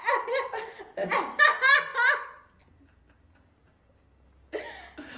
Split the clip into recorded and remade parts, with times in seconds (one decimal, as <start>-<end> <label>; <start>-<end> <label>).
0.0-5.2 recorded

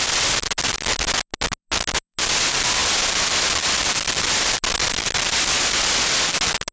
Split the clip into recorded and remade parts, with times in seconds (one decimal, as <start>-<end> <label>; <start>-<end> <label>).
0.0-6.7 recorded

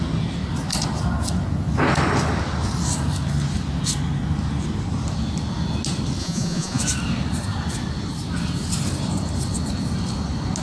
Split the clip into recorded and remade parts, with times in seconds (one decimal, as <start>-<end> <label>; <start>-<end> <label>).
0.0-6.2 recorded; 6.2-6.8 remade; 6.8-10.6 recorded

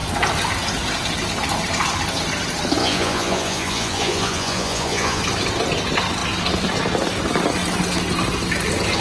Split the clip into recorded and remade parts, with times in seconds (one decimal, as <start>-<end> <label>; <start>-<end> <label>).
0.0-2.8 recorded; 2.8-5.2 remade; 5.2-9.0 recorded